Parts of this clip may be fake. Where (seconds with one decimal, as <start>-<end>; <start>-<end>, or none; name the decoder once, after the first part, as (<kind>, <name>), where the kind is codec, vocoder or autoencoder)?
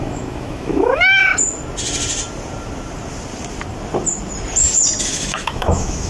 0.0-1.3 (autoencoder, DAC-VAE); 5.0-6.1